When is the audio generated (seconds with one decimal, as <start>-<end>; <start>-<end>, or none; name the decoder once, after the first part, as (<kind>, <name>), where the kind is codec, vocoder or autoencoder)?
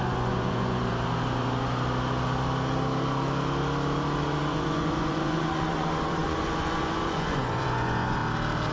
0.0-0.8 (vocoder, Vocos); 4.5-8.2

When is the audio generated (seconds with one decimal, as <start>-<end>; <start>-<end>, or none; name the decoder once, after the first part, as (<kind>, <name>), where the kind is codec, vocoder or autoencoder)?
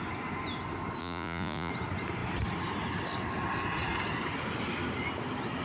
1.0-1.7 (vocoder, Vocos)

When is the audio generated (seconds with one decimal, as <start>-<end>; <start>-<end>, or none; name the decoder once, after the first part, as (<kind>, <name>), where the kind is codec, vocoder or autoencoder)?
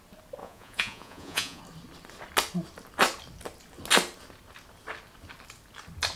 0.4-1.6 (vocoder, Vocos)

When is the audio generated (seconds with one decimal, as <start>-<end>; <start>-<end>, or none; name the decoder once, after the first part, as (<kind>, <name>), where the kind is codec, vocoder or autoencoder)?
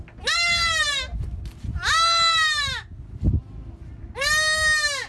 none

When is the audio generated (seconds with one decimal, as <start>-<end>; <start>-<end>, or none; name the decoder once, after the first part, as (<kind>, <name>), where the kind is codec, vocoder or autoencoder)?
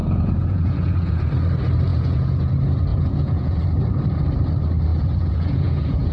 0.0-1.3 (vocoder, Vocos); 1.9-2.5; 2.9-3.6; 4.9-6.1